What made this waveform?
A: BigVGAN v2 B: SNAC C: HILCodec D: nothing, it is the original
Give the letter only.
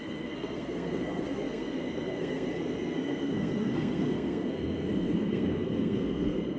B